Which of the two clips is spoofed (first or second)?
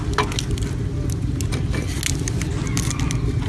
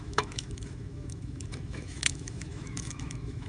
second